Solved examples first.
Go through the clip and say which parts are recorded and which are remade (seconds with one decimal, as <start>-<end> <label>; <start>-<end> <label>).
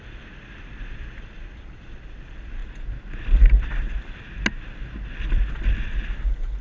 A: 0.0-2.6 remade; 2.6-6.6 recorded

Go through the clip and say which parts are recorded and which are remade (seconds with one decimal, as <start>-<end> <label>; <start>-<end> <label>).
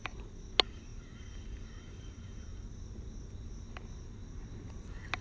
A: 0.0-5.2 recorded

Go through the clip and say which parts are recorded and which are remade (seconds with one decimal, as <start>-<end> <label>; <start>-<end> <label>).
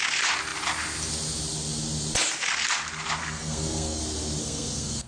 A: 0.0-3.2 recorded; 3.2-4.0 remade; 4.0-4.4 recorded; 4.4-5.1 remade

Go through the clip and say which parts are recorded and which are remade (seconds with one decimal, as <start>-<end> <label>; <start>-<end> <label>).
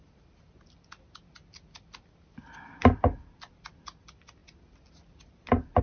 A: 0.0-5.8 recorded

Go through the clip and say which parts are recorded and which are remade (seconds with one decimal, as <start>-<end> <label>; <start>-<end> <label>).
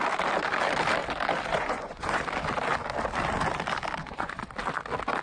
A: 0.0-1.5 recorded; 1.5-2.2 remade; 2.2-4.0 recorded; 4.0-4.5 remade; 4.5-5.2 recorded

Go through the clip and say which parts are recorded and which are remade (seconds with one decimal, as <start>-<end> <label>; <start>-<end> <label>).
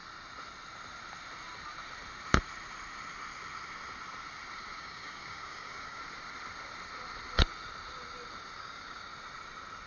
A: 0.0-4.8 recorded; 4.8-6.0 remade; 6.0-8.6 recorded; 8.6-9.1 remade; 9.1-9.9 recorded